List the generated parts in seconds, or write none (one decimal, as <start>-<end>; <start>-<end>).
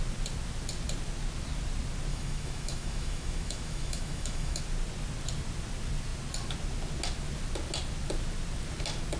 2.1-4.6